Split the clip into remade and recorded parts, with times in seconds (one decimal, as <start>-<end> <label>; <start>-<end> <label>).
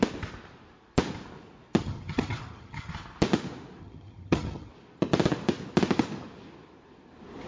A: 0.0-1.8 recorded; 1.8-2.9 remade; 2.9-3.8 recorded; 3.8-4.7 remade; 4.7-7.5 recorded